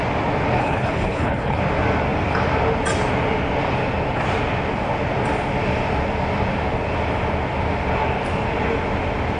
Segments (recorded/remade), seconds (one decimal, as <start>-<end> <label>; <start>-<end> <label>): 0.0-0.6 recorded; 0.6-1.6 remade; 1.6-9.4 recorded